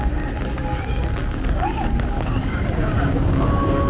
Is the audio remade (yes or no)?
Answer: yes